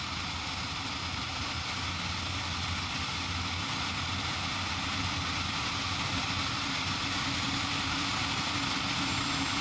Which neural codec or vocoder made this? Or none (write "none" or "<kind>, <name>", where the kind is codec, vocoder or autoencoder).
none